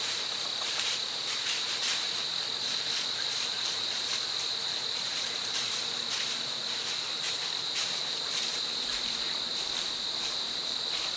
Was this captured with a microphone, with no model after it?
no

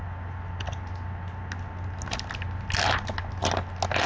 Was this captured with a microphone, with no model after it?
yes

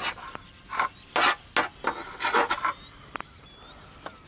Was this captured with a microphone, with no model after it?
yes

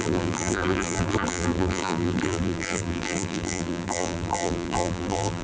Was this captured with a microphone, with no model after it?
no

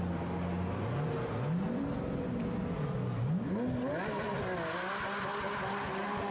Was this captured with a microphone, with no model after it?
yes